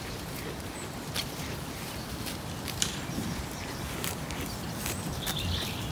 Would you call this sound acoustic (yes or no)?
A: no